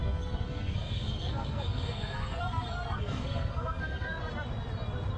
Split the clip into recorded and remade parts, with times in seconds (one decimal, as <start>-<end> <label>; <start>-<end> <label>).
0.0-4.2 remade; 4.2-5.2 recorded